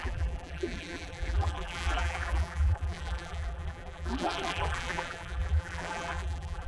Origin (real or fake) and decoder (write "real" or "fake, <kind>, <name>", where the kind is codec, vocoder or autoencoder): fake, vocoder, BigVGAN v2